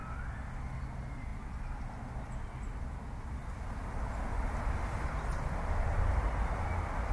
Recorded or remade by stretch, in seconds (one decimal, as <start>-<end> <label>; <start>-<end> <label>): 0.0-5.3 recorded; 5.3-6.3 remade; 6.3-7.1 recorded